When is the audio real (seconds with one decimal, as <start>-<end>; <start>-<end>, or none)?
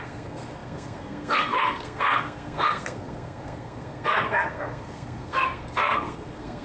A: none